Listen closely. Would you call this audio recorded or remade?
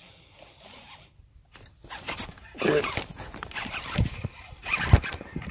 recorded